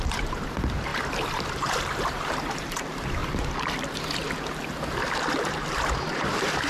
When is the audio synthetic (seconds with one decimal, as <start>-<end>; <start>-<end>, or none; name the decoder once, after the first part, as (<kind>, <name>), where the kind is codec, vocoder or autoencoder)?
0.0-3.2 (vocoder, BigVGAN v2); 5.7-6.7